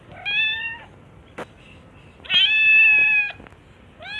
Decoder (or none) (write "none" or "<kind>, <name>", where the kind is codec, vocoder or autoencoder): none